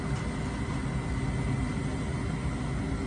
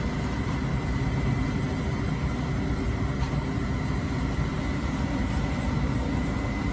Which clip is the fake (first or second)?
second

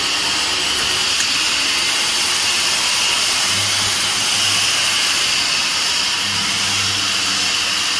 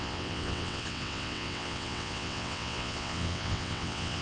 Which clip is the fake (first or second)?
second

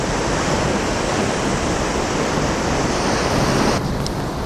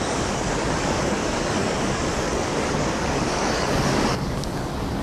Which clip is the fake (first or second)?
second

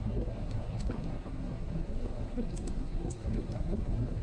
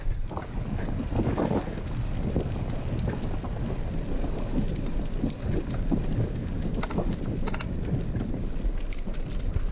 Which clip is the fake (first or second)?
first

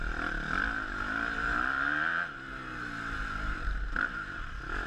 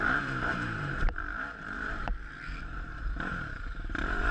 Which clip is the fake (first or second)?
second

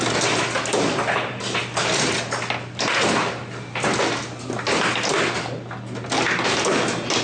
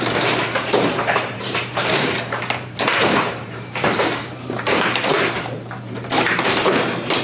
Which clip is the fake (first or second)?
second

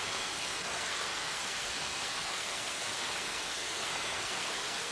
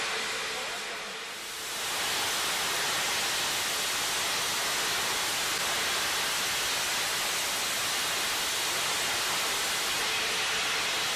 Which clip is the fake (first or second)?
first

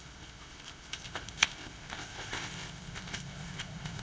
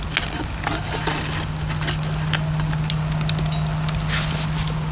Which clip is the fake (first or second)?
first